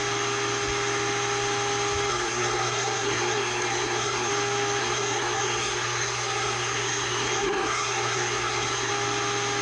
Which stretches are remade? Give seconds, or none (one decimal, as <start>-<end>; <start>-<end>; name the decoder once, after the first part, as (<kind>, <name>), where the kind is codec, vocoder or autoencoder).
2.1-4.3 (codec, SNAC); 4.8-8.9